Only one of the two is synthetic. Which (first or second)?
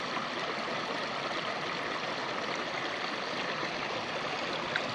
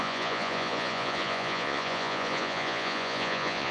second